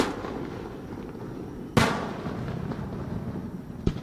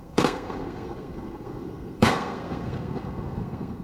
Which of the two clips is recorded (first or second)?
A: first